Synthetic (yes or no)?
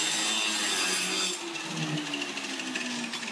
no